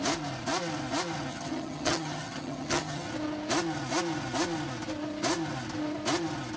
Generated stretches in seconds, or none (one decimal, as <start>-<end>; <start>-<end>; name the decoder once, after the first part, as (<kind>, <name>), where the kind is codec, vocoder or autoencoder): 1.3-3.1 (vocoder, HiFi-GAN)